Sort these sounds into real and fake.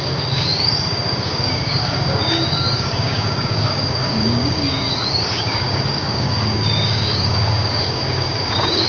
fake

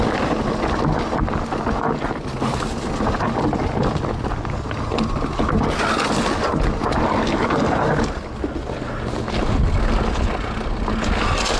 real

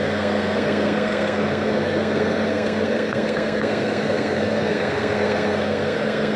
fake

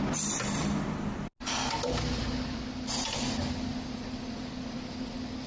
real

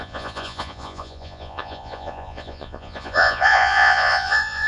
fake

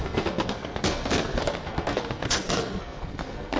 fake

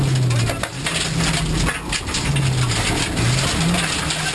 real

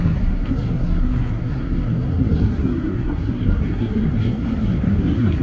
fake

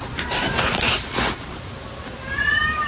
real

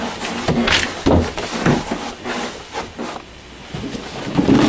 real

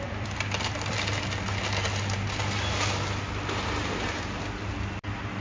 real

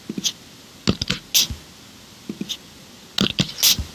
real